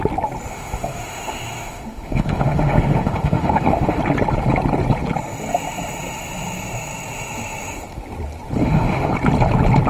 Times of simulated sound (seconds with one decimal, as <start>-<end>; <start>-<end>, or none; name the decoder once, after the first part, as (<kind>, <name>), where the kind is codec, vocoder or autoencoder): 0.5-4.0 (autoencoder, DAC-VAE); 8.6-9.1